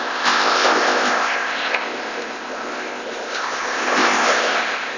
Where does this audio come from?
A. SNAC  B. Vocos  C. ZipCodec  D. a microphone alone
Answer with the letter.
C